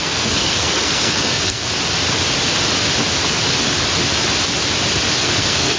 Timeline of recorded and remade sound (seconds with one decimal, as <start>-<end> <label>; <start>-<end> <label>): 0.0-1.7 remade; 1.7-5.2 recorded; 5.2-5.8 remade